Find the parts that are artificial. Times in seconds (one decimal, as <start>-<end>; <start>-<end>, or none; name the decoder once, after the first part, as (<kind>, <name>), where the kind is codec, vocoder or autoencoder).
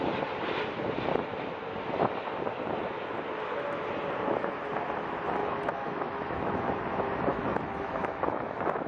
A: 5.4-6.7 (autoencoder, DAC-VAE); 7.3-8.9